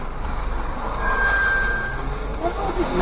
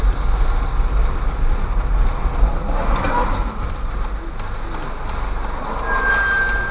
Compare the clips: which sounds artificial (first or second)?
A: first